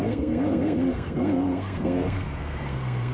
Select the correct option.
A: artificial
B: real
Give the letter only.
A